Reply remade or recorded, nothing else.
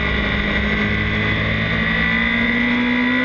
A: recorded